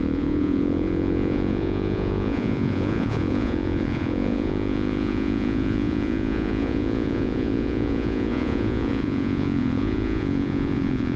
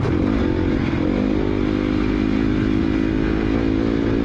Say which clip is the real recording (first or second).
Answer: second